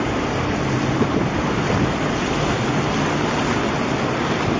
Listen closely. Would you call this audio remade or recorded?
recorded